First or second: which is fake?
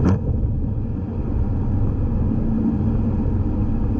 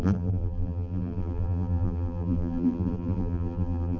second